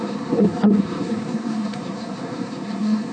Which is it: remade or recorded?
remade